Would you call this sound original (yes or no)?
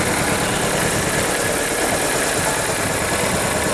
yes